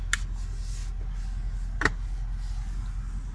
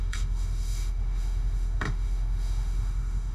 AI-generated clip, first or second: second